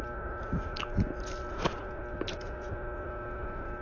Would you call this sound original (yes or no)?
yes